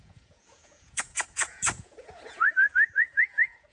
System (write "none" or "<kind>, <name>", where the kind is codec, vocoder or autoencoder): vocoder, Vocos